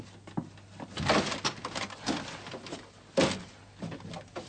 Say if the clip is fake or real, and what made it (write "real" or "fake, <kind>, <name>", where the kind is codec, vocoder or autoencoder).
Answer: real